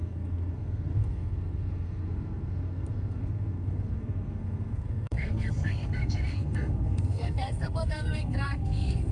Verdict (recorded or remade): remade